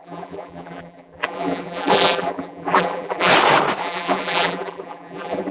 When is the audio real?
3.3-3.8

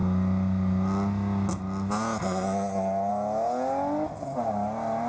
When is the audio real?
0.0-5.1

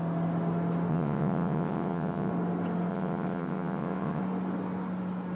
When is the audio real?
0.0-0.9; 2.3-2.9; 4.2-5.3

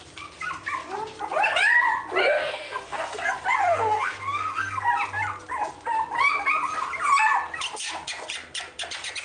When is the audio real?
0.0-2.2; 3.3-3.7; 4.9-9.2